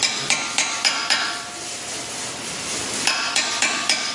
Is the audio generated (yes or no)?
yes